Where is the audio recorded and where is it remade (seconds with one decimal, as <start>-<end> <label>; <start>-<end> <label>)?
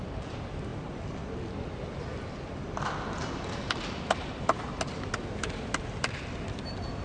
0.0-7.0 recorded